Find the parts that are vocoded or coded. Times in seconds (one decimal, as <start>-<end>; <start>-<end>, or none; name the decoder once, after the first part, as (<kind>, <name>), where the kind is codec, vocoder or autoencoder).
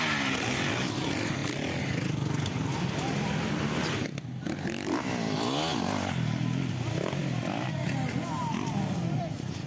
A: none